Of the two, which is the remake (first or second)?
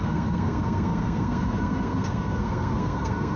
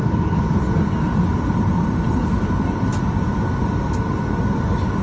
first